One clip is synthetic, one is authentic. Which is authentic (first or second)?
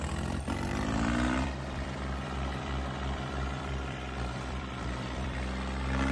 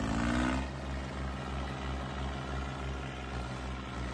second